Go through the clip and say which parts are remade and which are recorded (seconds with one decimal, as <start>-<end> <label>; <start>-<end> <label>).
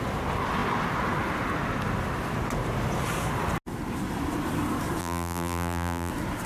0.0-5.0 recorded; 5.0-6.1 remade; 6.1-6.5 recorded